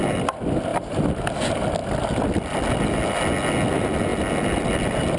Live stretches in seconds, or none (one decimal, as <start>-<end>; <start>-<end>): 0.0-0.7; 1.2-5.2